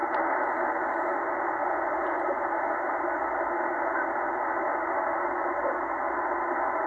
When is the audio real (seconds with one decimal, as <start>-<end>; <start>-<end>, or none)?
0.0-1.6; 2.4-6.9